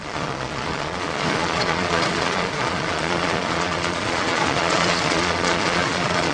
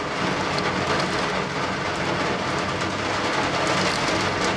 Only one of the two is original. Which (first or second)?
second